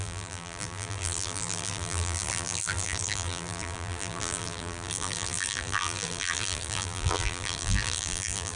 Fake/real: fake